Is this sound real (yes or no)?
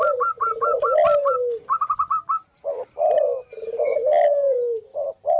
yes